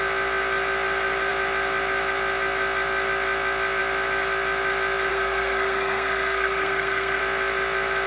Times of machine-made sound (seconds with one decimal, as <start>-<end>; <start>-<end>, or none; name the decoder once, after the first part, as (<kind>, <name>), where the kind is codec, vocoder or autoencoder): 5.1-7.2 (codec, SNAC)